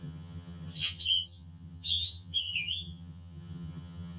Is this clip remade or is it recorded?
remade